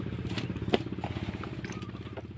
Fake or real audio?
real